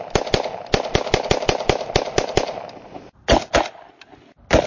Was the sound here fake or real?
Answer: real